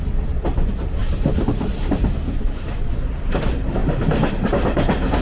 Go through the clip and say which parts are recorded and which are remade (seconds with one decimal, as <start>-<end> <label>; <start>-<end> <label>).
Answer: 0.0-5.2 recorded